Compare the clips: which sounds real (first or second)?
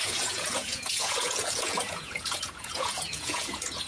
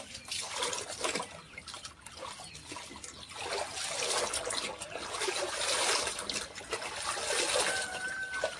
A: second